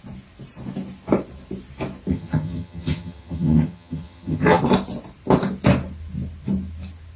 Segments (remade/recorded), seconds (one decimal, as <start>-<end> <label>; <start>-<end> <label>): 0.0-2.1 recorded; 2.1-4.6 remade; 4.6-7.2 recorded